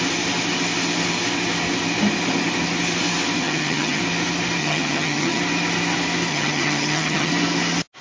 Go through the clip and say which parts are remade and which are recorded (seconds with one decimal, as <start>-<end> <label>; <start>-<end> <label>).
0.0-3.4 recorded; 3.4-4.0 remade; 4.0-4.6 recorded; 4.6-5.4 remade; 5.4-6.3 recorded; 6.3-7.3 remade; 7.3-8.0 recorded